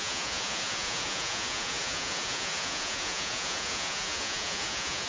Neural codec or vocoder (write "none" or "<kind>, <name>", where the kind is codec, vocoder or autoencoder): vocoder, Vocos